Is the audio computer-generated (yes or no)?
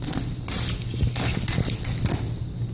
no